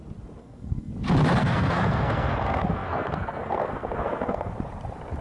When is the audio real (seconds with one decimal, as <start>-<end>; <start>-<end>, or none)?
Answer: 0.0-0.4; 0.9-1.4; 4.5-5.2